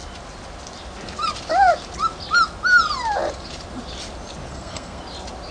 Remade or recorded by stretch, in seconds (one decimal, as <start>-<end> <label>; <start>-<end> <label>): 0.0-4.5 recorded; 4.5-5.0 remade; 5.0-5.5 recorded